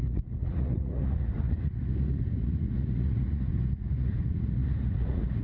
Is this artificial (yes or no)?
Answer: yes